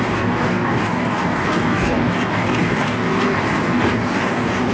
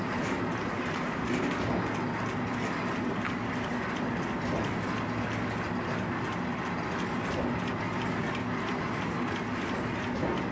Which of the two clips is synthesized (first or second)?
first